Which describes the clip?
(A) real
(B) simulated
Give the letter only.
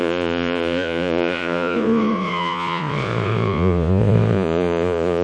B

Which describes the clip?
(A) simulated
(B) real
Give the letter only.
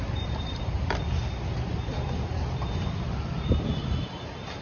B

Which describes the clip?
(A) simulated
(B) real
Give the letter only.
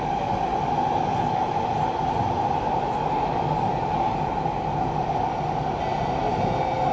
B